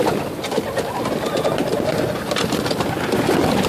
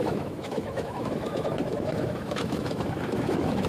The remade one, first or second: second